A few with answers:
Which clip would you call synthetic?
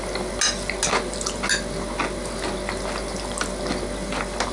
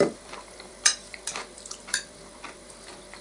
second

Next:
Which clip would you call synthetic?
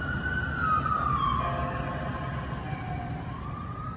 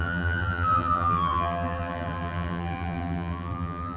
second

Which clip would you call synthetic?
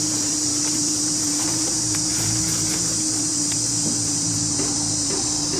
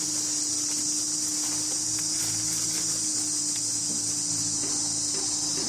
first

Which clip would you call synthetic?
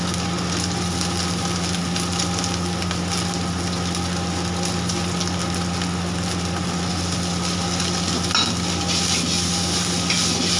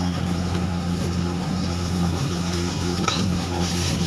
second